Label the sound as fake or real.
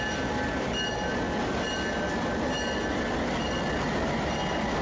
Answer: real